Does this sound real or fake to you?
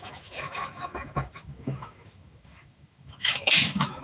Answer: fake